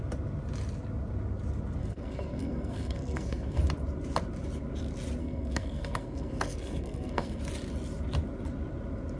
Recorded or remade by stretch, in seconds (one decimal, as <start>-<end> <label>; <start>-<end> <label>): 0.0-1.8 recorded; 1.8-3.6 remade; 3.6-5.2 recorded; 5.2-7.4 remade; 7.4-9.2 recorded